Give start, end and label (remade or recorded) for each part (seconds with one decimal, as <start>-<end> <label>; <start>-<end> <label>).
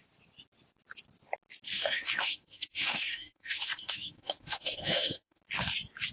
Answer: 0.0-1.7 recorded; 1.7-5.4 remade; 5.4-6.1 recorded